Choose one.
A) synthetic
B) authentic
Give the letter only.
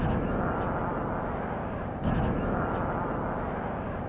B